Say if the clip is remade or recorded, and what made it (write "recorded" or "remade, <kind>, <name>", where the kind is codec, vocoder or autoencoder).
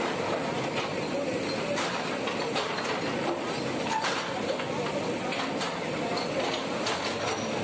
recorded